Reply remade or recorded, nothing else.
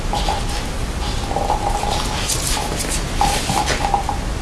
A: recorded